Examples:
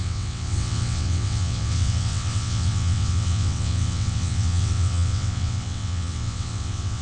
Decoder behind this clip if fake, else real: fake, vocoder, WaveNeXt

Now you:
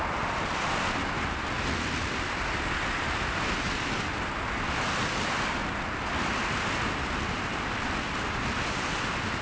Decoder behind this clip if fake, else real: real